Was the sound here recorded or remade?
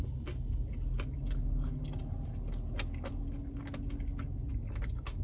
recorded